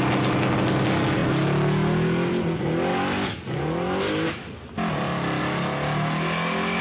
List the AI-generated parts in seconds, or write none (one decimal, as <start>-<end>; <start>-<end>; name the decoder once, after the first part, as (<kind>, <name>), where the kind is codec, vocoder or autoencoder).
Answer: none